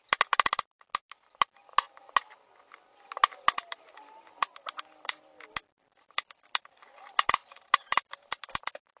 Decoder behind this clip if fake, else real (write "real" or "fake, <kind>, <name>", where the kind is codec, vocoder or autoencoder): real